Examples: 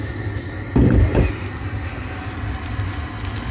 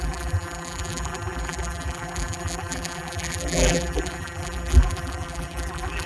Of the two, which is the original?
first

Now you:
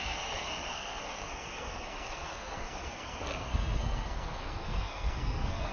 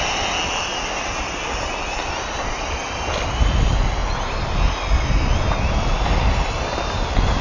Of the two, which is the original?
second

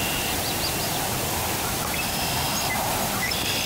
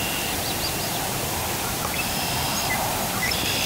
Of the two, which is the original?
first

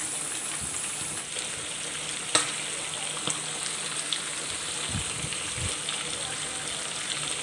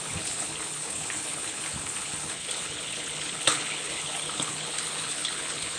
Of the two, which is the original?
first